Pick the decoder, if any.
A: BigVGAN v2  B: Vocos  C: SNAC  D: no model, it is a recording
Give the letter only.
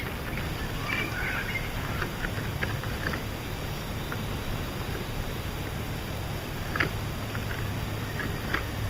D